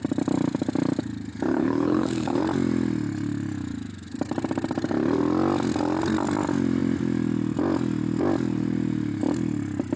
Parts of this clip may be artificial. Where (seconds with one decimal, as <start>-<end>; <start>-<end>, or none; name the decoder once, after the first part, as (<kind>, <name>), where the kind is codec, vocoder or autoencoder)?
1.5-2.4 (codec, HILCodec)